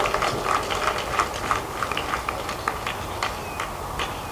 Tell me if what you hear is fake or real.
real